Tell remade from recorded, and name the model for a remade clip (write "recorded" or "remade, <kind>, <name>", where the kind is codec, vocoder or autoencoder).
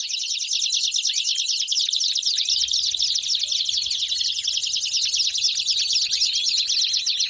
recorded